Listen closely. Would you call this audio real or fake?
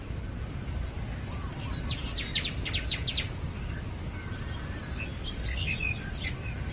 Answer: real